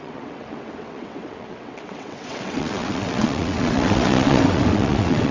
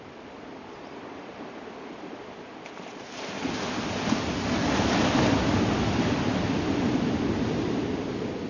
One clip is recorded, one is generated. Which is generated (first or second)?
first